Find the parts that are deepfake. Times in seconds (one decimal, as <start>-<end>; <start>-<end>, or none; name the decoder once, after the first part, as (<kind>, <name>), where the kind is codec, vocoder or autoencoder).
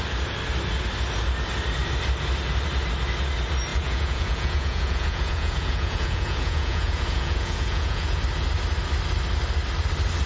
3.7-8.2 (vocoder, Vocos)